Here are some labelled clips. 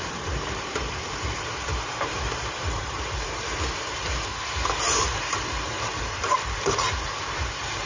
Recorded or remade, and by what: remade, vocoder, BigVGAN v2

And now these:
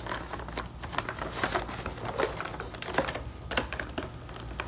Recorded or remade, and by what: recorded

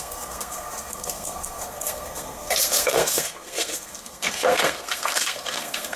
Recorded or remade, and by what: remade, codec, SNAC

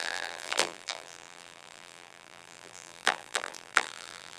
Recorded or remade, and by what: remade, vocoder, BigVGAN v2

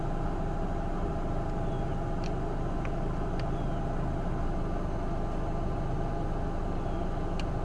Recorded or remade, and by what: recorded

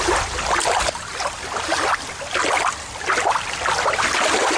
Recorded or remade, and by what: recorded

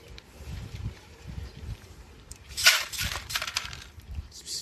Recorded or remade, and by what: remade, vocoder, BigVGAN v2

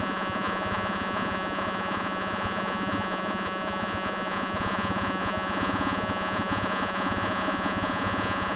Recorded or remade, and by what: remade, vocoder, Vocos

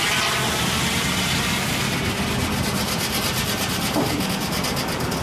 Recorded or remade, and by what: recorded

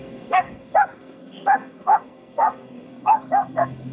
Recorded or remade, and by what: remade, codec, SNAC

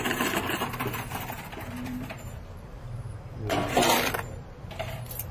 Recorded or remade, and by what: remade, vocoder, BigVGAN v2